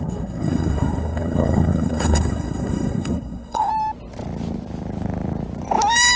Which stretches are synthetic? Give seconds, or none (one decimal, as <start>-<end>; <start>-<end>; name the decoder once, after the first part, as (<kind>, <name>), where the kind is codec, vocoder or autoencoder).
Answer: 0.0-3.7 (codec, SNAC)